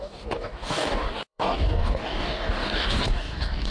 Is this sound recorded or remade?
remade